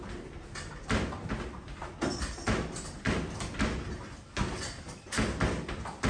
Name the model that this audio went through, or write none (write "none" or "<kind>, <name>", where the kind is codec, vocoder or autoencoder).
none